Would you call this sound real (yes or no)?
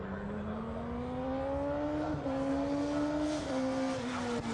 yes